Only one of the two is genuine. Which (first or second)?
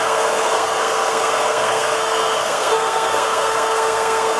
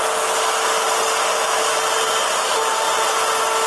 second